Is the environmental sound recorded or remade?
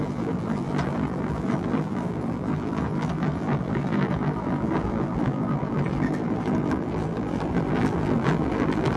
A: remade